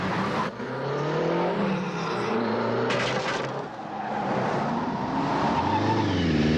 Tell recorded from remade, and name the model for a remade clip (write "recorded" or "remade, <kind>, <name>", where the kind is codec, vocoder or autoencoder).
recorded